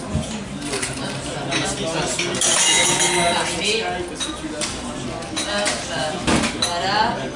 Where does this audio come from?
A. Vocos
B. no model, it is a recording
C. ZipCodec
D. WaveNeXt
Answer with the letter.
B